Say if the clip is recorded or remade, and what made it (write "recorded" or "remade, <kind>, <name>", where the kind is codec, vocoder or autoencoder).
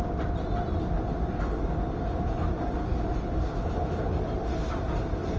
recorded